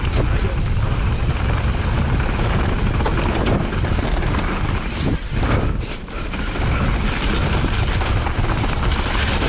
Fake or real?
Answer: real